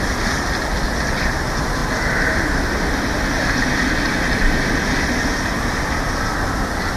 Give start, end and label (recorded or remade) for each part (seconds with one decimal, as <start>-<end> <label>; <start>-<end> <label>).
0.0-7.0 recorded